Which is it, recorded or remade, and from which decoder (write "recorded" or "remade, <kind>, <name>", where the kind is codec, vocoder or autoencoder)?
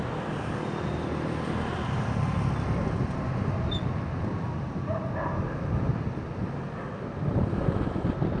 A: recorded